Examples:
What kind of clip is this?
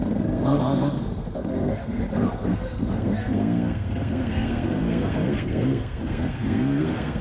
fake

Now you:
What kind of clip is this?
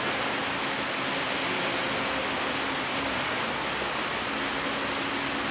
real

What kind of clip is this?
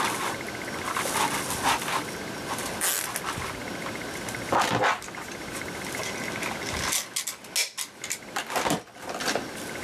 real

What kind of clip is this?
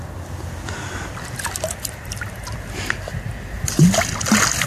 real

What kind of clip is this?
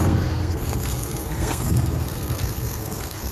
fake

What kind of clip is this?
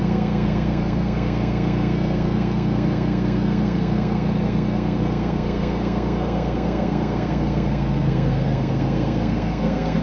fake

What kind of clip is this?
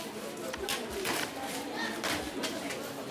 real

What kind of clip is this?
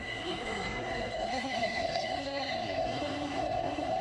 fake